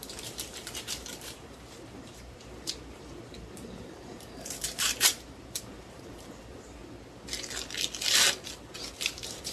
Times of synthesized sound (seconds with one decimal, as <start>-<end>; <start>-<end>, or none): 0.0-6.8; 8.9-9.5